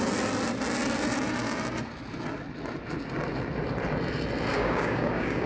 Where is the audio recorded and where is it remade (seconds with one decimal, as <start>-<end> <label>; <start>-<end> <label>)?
0.0-4.5 recorded; 4.5-5.5 remade

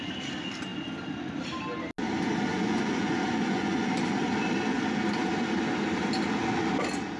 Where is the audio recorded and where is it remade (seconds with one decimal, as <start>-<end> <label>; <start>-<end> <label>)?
0.0-2.5 recorded; 2.5-3.8 remade; 3.8-7.2 recorded

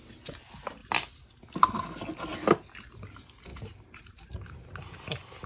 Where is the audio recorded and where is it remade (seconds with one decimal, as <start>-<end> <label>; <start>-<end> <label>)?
0.0-0.8 recorded; 0.8-1.3 remade; 1.3-3.5 recorded; 3.5-5.5 remade

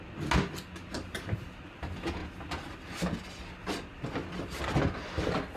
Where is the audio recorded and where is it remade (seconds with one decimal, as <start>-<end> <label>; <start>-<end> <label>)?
0.0-5.6 recorded

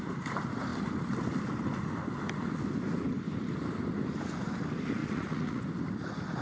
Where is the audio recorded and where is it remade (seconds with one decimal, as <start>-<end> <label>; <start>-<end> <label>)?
0.0-5.0 recorded; 5.0-5.6 remade; 5.6-6.4 recorded

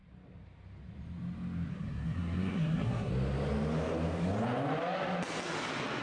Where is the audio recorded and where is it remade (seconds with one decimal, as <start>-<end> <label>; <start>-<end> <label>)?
0.0-1.7 recorded; 1.7-3.1 remade; 3.1-6.0 recorded

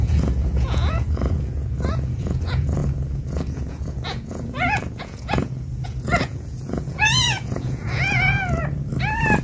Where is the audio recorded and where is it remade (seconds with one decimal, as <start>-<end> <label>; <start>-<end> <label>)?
0.0-8.6 remade; 8.6-9.4 recorded